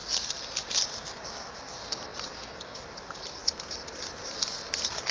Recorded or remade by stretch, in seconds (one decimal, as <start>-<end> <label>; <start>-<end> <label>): 0.0-5.1 recorded